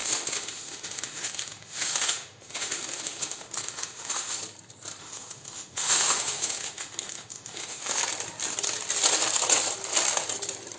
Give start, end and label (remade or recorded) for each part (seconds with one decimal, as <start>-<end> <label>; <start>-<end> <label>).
0.0-4.4 remade; 4.4-5.0 recorded; 5.0-8.0 remade; 8.0-10.8 recorded